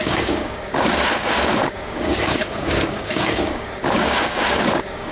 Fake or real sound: fake